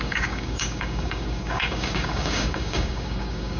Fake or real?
fake